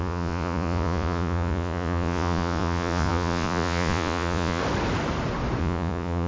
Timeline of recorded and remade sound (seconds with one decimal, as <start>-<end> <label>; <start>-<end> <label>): 0.0-4.6 remade; 4.6-5.6 recorded; 5.6-6.3 remade